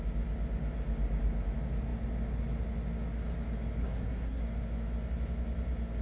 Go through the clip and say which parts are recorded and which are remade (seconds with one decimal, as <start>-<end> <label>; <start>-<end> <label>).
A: 0.0-3.8 recorded; 3.8-4.4 remade; 4.4-6.0 recorded